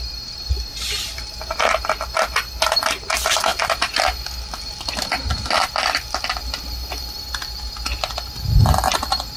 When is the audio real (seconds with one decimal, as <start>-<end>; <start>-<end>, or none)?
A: 0.0-9.4